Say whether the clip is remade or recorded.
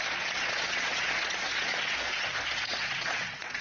remade